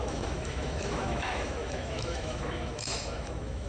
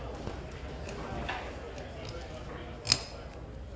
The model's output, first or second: first